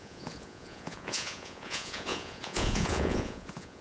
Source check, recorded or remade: remade